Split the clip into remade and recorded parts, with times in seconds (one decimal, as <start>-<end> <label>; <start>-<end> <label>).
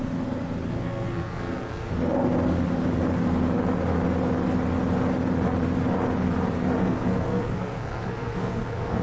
0.0-0.7 recorded; 0.7-1.9 remade; 1.9-6.8 recorded; 6.8-9.0 remade